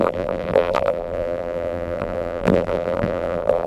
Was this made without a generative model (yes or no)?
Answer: no